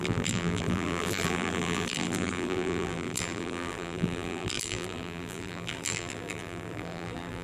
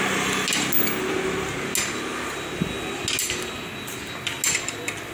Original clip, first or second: second